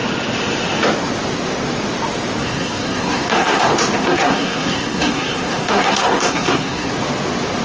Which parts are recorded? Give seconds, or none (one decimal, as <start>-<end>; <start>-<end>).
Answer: 0.0-2.4; 3.6-4.0; 6.9-7.6